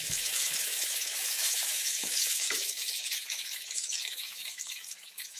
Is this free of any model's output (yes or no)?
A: no